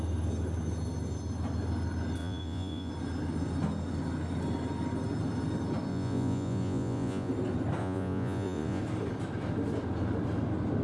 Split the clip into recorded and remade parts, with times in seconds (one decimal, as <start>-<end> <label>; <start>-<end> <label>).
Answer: 0.0-2.2 recorded; 2.2-2.9 remade; 2.9-5.9 recorded; 5.9-7.3 remade; 7.3-7.8 recorded; 7.8-8.8 remade; 8.8-10.8 recorded